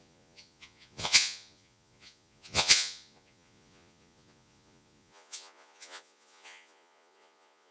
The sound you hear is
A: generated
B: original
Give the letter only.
A